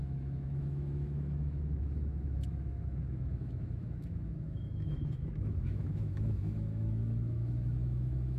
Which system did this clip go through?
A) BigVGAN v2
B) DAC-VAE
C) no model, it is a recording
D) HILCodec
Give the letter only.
B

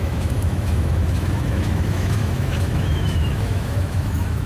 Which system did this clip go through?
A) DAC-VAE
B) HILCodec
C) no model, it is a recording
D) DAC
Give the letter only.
A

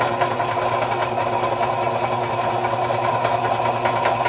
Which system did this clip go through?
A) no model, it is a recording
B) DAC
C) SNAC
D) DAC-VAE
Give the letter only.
A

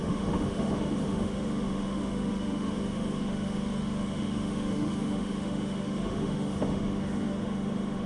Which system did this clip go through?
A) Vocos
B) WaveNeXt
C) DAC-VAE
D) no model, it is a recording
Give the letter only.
C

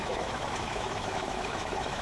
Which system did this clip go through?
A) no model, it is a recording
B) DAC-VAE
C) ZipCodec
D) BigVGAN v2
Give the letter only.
B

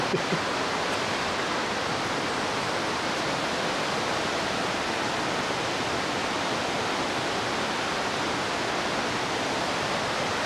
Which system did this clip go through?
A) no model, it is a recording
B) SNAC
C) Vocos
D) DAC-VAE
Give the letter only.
A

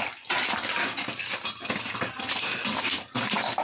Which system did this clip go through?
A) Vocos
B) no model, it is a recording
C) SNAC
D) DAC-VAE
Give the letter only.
B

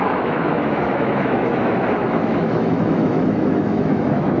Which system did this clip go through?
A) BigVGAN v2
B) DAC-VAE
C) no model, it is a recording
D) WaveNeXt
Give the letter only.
B